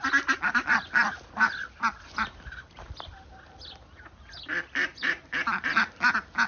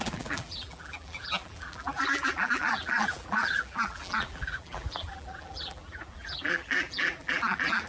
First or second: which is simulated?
second